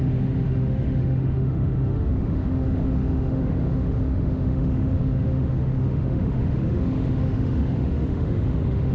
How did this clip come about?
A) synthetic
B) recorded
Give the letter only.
A